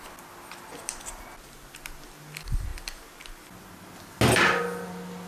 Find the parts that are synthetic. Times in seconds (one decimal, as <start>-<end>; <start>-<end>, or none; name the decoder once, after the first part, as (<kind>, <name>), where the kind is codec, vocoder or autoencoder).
none